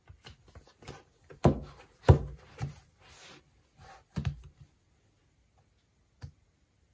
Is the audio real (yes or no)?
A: yes